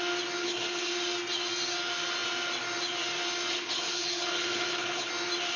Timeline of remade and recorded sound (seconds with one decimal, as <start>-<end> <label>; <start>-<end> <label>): 0.0-0.4 recorded; 0.4-0.9 remade; 0.9-3.5 recorded; 3.5-5.1 remade; 5.1-5.6 recorded